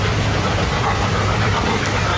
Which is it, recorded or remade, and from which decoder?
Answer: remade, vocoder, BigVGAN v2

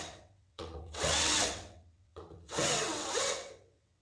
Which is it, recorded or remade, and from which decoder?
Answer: remade, vocoder, WaveNeXt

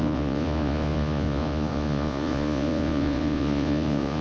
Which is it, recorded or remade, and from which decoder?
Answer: remade, vocoder, Vocos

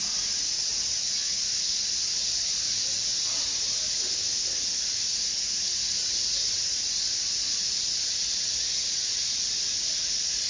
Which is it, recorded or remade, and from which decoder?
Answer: recorded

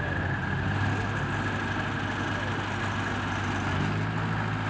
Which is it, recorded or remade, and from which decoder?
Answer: recorded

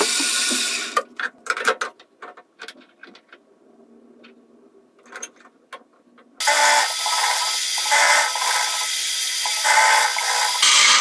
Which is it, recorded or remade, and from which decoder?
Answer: recorded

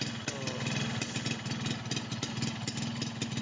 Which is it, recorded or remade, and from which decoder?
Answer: recorded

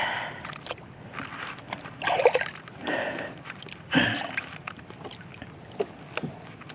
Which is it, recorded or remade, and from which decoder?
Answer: recorded